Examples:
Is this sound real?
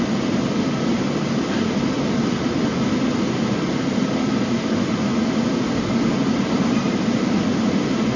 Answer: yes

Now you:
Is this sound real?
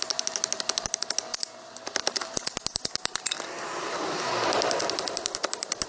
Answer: yes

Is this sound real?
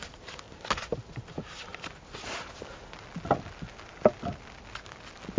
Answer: yes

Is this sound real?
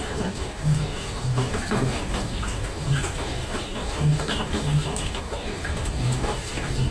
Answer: no